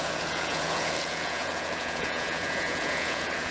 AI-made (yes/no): yes